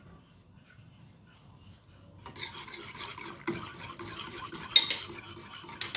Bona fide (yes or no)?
yes